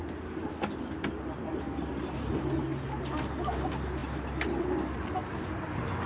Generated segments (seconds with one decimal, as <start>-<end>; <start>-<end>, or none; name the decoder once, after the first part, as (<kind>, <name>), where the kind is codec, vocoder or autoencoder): none

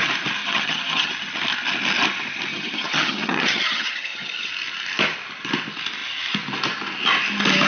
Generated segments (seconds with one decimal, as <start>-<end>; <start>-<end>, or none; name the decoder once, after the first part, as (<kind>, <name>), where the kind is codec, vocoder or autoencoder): 0.4-1.1 (vocoder, HiFi-GAN); 2.5-4.5